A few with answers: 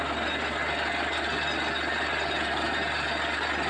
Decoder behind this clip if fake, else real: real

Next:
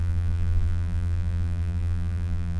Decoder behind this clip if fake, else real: fake, vocoder, BigVGAN v2